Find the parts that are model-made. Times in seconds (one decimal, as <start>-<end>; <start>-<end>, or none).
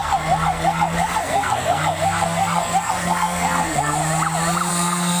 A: 0.0-4.0; 4.7-5.2